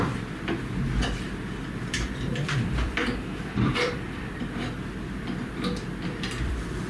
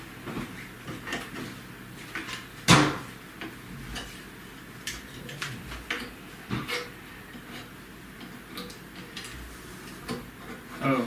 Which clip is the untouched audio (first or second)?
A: second